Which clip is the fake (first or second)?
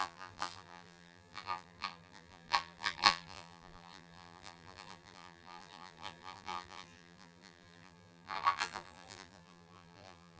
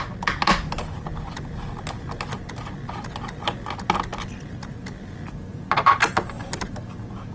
first